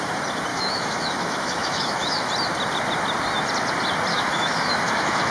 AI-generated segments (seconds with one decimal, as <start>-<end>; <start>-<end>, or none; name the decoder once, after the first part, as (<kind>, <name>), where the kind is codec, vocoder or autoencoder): 0.5-2.3 (autoencoder, DAC-VAE); 4.1-5.3